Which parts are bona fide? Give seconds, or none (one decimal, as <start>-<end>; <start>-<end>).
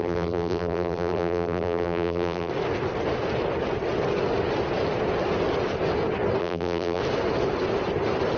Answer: 2.5-6.4; 7.0-8.4